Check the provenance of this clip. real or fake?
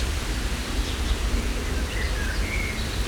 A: real